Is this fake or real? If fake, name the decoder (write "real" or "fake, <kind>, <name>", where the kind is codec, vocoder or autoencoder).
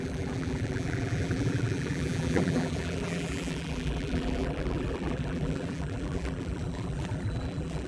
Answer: fake, vocoder, BigVGAN v2